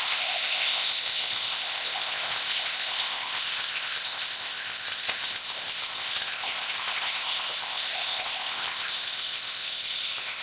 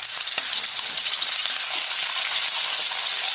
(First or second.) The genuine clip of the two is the second